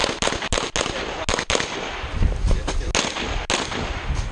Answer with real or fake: real